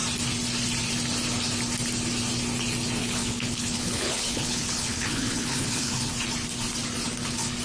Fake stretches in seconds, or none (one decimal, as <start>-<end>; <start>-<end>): 3.0-6.1